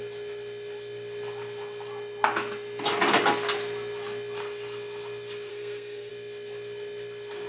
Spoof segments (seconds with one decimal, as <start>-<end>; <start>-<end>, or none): 5.5-6.1